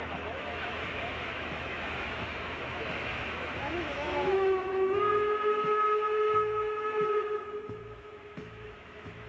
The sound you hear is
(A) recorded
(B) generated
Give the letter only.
B